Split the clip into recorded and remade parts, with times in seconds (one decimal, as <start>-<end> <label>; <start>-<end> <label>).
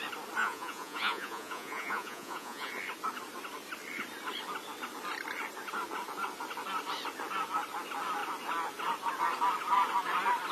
0.0-0.4 recorded; 0.4-2.7 remade; 2.7-10.5 recorded